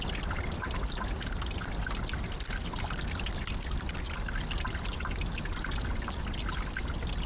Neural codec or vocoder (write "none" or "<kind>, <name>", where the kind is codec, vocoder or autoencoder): none